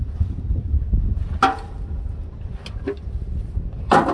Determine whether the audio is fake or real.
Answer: real